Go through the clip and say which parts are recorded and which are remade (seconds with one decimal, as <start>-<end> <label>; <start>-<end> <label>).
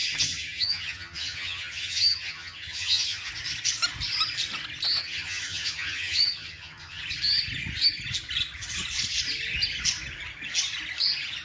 0.0-3.3 remade; 3.3-5.0 recorded; 5.0-7.0 remade; 7.0-11.4 recorded